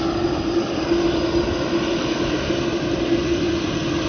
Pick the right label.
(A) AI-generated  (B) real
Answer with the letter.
B